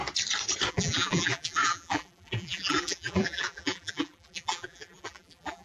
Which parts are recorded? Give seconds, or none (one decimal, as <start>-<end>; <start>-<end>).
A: 0.0-0.7